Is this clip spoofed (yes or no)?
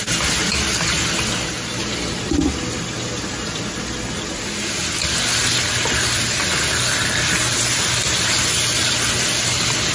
no